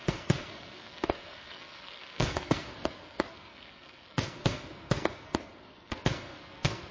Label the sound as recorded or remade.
remade